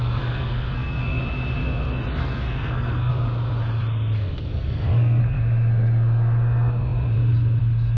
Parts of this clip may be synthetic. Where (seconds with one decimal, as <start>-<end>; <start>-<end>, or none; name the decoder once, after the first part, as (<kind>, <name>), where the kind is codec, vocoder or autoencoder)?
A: 0.0-1.2 (codec, SNAC); 2.2-3.1; 4.2-5.2